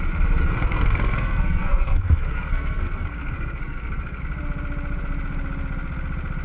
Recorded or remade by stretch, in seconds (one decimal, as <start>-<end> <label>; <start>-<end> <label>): 0.0-0.4 recorded; 0.4-4.2 remade; 4.2-6.4 recorded